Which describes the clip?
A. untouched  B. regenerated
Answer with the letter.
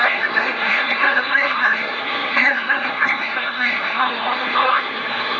B